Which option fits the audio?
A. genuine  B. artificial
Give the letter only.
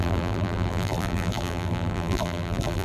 B